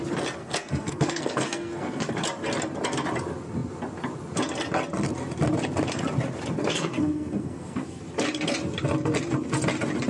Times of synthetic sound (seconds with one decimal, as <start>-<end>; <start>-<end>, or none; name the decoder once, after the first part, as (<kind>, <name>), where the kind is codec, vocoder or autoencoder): 0.4-2.1 (codec, SNAC); 6.6-8.0